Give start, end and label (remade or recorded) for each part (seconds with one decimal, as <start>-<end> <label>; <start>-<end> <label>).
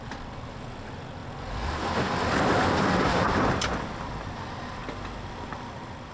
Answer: 0.0-4.8 remade; 4.8-5.4 recorded; 5.4-6.1 remade